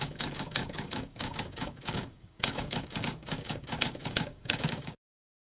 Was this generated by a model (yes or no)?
yes